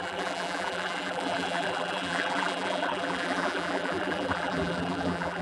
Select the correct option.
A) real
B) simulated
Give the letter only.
B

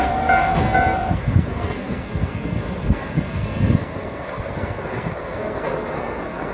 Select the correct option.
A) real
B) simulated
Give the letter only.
B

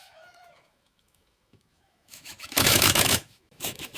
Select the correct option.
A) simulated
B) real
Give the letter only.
A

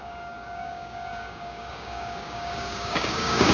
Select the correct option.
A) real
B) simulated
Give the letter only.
B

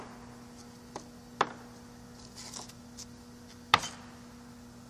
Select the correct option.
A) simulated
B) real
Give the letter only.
B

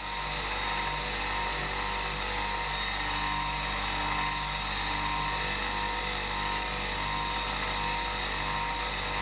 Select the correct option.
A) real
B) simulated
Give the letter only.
A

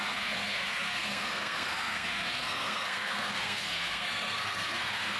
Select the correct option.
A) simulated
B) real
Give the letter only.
A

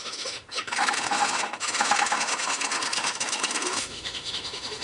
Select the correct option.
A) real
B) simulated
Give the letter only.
B